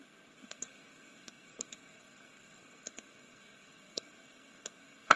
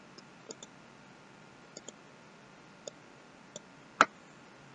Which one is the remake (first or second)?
first